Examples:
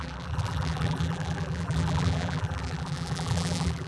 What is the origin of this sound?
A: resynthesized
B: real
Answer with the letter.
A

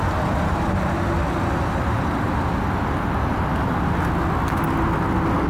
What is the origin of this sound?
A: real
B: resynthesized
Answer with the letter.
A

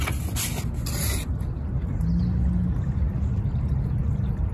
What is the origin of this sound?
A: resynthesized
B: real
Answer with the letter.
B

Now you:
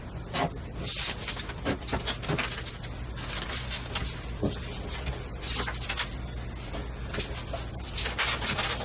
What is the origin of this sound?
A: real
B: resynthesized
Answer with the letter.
A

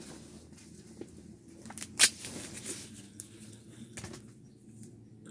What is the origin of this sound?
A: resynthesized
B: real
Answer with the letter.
B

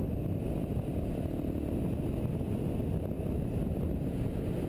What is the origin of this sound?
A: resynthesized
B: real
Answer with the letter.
B